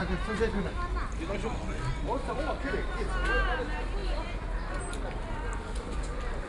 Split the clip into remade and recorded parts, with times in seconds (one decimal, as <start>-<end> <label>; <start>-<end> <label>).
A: 0.0-6.5 recorded